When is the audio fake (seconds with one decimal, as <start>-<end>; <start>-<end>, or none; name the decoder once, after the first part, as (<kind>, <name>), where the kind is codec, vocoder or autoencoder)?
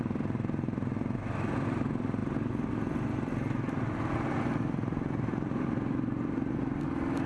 none